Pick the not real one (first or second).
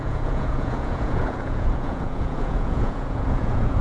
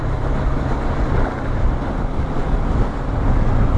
first